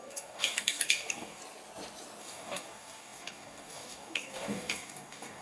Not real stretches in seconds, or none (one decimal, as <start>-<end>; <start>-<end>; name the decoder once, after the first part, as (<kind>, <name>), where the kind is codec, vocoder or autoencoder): 0.0-1.4 (codec, DAC); 2.2-5.4